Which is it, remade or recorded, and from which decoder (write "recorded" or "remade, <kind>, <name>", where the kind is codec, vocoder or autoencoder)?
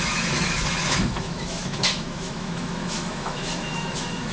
remade, autoencoder, DAC-VAE